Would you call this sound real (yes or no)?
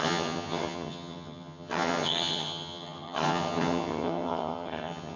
no